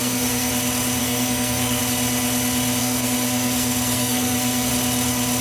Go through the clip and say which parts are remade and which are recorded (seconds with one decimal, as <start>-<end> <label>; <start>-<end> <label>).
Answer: 0.0-0.5 remade; 0.5-1.0 recorded; 1.0-1.8 remade; 1.8-2.8 recorded; 2.8-4.7 remade; 4.7-5.4 recorded